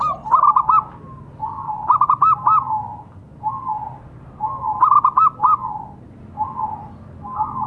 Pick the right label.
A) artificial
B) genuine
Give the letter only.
B